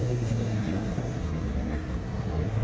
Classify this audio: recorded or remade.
remade